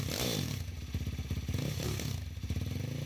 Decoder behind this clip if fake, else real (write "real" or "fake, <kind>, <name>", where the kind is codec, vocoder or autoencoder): real